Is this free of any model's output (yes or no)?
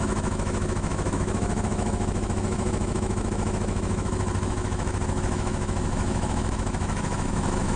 no